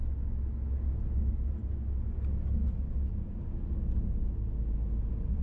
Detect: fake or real real